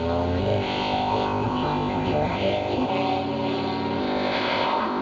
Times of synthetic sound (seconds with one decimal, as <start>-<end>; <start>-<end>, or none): 0.4-2.9; 4.0-5.0